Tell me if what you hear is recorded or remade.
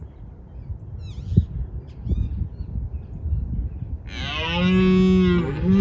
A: recorded